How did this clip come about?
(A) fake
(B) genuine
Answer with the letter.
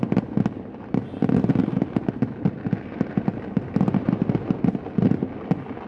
B